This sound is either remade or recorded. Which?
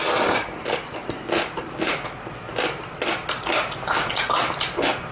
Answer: recorded